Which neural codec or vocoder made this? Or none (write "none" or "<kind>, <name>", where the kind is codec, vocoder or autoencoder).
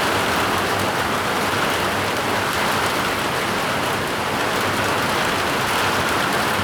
none